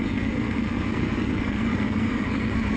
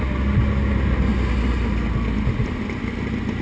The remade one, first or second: first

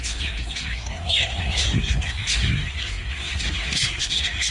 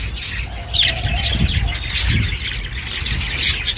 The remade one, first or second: first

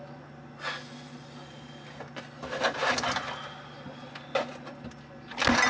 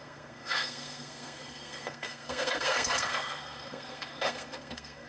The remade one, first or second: second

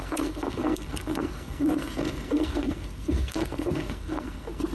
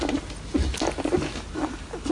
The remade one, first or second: first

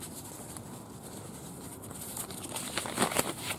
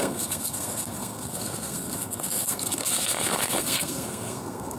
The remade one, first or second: second